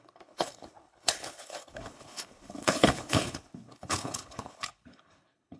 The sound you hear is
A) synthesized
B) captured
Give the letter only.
A